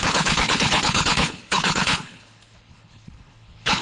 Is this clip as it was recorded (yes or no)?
no